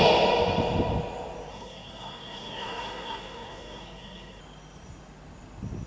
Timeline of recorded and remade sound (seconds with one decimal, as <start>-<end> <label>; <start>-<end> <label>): 0.0-1.5 recorded; 1.5-4.4 remade; 4.4-5.9 recorded